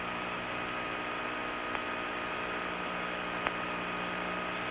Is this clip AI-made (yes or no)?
no